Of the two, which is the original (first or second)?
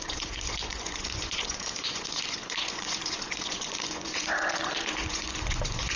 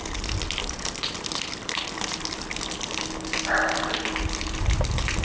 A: second